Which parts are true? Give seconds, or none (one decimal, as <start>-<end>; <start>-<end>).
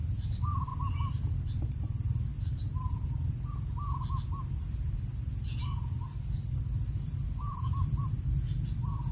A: 0.7-1.3; 2.3-6.5